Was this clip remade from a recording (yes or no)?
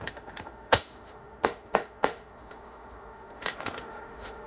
yes